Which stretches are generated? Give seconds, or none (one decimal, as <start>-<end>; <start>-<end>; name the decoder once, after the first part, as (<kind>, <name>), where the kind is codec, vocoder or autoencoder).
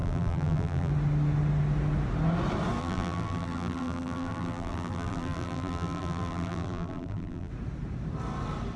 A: 0.0-0.9 (vocoder, BigVGAN v2); 2.8-7.5